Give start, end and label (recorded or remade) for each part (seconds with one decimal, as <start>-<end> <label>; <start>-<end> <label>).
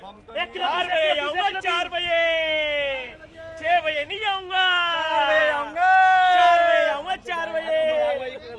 0.0-0.6 recorded; 0.6-5.4 remade; 5.4-8.6 recorded